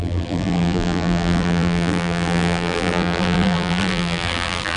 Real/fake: fake